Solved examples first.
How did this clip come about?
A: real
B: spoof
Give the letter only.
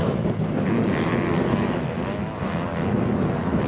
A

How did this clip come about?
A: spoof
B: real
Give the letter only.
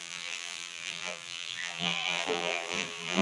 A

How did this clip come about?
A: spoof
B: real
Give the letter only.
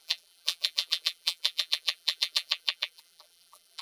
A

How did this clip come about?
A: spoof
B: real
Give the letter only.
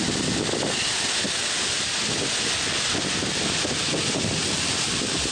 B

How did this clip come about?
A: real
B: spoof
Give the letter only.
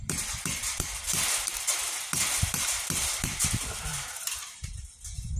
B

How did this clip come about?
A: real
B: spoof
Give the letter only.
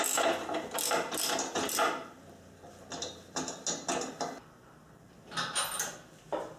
A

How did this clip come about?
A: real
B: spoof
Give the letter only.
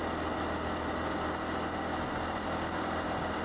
A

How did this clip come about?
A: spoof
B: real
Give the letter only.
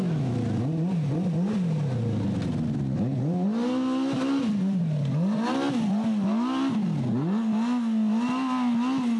B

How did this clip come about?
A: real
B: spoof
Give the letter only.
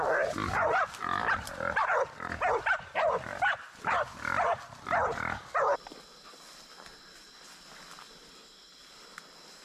A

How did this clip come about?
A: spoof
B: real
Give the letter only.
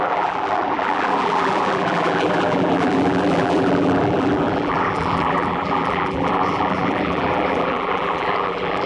A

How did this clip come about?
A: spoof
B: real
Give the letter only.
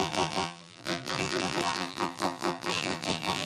A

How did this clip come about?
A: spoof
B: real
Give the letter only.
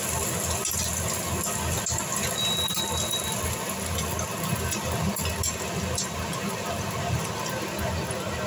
B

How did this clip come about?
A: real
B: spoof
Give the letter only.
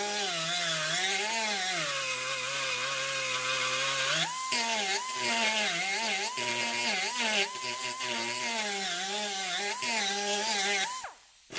A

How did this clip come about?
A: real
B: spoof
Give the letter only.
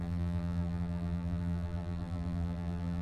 B